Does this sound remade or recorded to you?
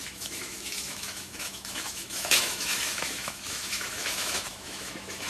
remade